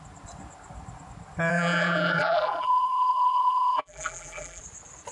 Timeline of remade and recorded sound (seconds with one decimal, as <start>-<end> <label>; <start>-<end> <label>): 0.0-1.5 recorded; 1.5-4.6 remade; 4.6-5.1 recorded

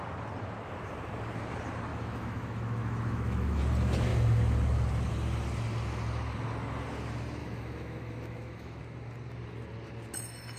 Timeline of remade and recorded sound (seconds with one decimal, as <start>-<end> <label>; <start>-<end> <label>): 0.0-1.9 recorded; 1.9-3.6 remade; 3.6-7.4 recorded; 7.4-8.8 remade; 8.8-10.6 recorded

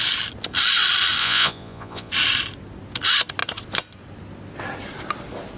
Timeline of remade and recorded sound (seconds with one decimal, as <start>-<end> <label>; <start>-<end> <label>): 0.0-1.2 recorded; 1.2-2.1 remade; 2.1-5.6 recorded

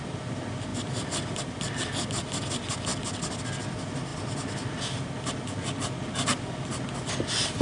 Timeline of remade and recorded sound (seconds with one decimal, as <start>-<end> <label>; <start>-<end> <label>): 0.0-7.6 recorded

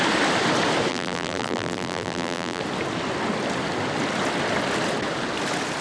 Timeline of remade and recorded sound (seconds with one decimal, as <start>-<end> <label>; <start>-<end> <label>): 0.0-0.9 recorded; 0.9-2.6 remade; 2.6-5.8 recorded